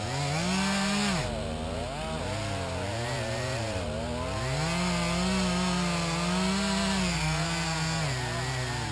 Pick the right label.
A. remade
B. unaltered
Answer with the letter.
B